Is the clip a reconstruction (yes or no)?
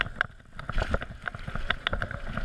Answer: no